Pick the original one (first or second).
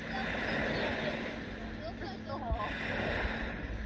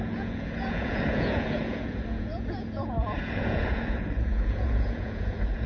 first